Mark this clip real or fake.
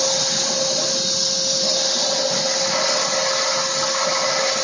fake